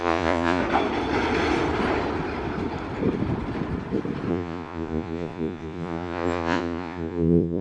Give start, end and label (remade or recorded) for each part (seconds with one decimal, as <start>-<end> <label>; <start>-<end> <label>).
0.0-0.6 remade; 0.6-4.3 recorded; 4.3-7.6 remade